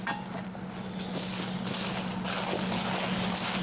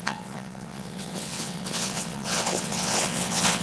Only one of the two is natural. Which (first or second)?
first